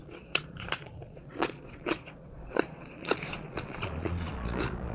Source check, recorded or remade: remade